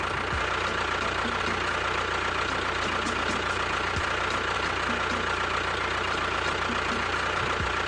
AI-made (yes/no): no